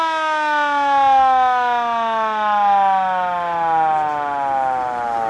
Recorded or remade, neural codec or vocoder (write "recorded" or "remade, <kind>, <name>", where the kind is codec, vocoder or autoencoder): recorded